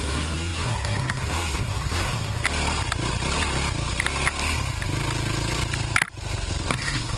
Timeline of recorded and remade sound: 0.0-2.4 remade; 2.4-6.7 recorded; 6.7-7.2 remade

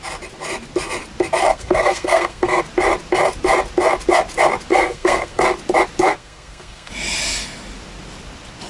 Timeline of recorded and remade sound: 0.0-1.5 recorded; 1.5-2.6 remade; 2.6-4.7 recorded; 4.7-5.4 remade; 5.4-6.1 recorded; 6.1-6.9 remade; 6.9-8.7 recorded